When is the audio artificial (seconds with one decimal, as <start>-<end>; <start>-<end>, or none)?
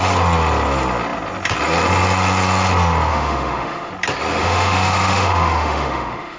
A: 3.1-3.9; 4.4-6.4